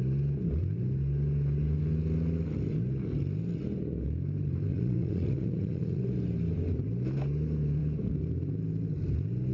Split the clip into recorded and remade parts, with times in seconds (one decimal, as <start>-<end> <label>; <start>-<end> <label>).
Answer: 0.0-4.7 recorded; 4.7-6.0 remade; 6.0-9.5 recorded